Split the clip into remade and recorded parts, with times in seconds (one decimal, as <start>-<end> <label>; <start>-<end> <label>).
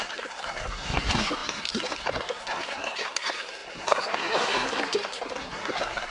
0.0-6.1 remade